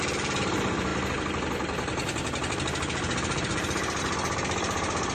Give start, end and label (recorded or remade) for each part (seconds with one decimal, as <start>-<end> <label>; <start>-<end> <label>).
0.0-5.1 recorded